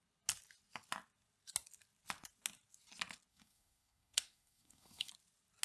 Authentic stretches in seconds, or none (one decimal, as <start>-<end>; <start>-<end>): 0.0-3.3; 5.1-5.6